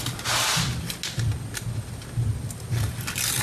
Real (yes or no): yes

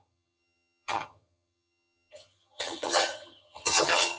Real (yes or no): no